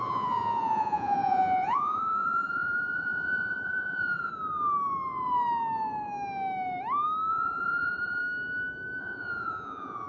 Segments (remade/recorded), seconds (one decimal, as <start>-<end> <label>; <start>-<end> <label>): 0.0-4.3 remade; 4.3-7.3 recorded; 7.3-8.2 remade; 8.2-9.0 recorded; 9.0-10.1 remade